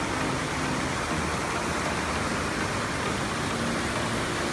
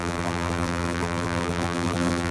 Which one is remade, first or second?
second